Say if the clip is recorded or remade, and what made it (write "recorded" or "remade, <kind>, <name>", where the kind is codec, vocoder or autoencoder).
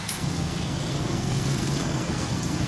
remade, codec, SNAC